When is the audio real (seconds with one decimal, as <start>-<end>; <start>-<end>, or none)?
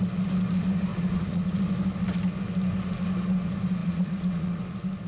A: 0.0-0.9; 1.6-3.8; 4.6-5.1